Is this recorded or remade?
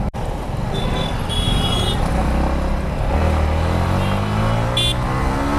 recorded